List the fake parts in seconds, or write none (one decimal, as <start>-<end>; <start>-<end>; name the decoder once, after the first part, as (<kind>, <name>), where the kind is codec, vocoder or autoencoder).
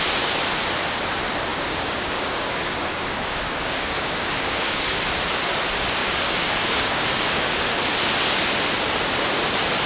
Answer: 1.5-5.0 (codec, DAC); 6.0-7.5